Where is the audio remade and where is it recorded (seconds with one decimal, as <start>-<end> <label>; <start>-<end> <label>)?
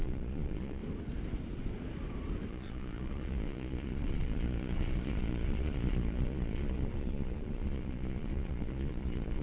0.0-0.8 remade; 0.8-2.5 recorded; 2.5-9.4 remade